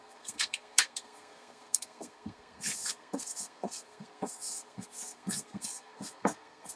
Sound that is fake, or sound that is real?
fake